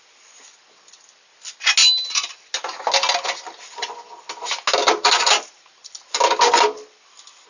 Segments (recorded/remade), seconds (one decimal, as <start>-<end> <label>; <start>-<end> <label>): 0.0-4.8 recorded; 4.8-6.2 remade; 6.2-7.5 recorded